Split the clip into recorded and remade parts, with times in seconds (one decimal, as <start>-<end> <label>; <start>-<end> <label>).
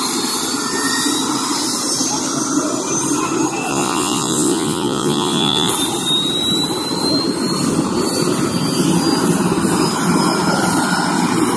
0.0-3.7 recorded; 3.7-5.7 remade; 5.7-11.6 recorded